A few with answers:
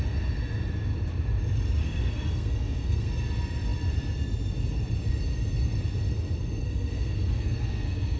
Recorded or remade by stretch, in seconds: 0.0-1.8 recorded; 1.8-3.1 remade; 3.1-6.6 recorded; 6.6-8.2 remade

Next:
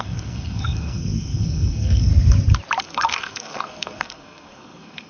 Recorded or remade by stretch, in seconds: 0.0-2.1 remade; 2.1-2.8 recorded; 2.8-5.1 remade

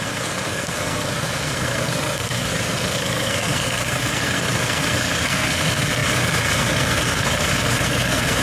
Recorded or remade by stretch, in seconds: 0.0-8.4 remade

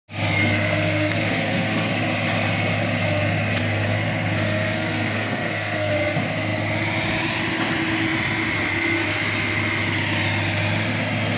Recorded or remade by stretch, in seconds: 0.0-0.4 recorded; 0.4-1.9 remade; 1.9-3.6 recorded; 3.6-5.9 remade; 5.9-11.4 recorded

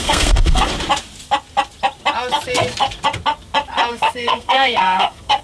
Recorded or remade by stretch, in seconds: 0.0-0.7 remade; 0.7-3.9 recorded; 3.9-5.4 remade

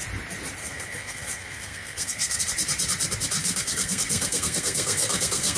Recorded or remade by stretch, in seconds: 0.0-0.6 recorded; 0.6-2.4 remade; 2.4-3.4 recorded; 3.4-5.6 remade